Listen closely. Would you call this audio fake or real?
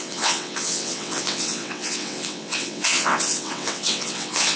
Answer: fake